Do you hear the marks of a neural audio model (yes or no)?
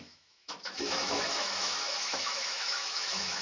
yes